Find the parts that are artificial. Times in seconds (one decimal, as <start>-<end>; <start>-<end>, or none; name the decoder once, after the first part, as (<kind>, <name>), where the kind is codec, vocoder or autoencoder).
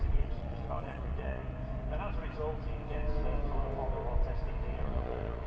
0.0-1.4 (vocoder, Vocos); 4.7-5.5